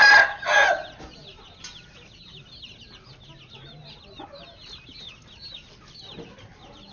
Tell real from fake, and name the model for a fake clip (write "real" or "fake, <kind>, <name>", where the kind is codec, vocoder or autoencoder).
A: real